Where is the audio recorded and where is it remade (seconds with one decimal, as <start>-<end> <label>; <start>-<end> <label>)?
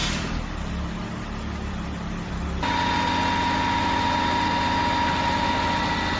0.0-2.3 remade; 2.3-6.2 recorded